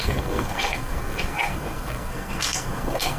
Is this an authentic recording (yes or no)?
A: no